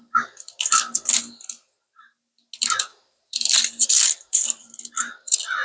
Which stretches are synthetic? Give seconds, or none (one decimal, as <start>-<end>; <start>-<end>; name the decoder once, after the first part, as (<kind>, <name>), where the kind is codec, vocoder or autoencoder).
2.9-4.8 (vocoder, BigVGAN v2)